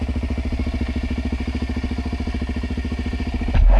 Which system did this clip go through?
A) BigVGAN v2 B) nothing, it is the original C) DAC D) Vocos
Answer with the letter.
B